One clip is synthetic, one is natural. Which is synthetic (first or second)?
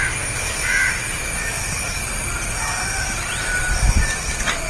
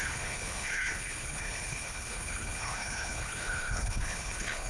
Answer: second